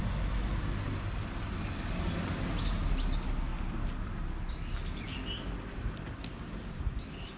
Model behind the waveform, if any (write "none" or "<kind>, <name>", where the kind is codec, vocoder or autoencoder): none